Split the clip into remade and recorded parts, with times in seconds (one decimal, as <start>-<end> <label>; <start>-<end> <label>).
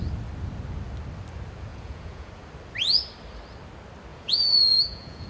0.0-1.7 recorded; 1.7-2.3 remade; 2.3-4.1 recorded; 4.1-5.3 remade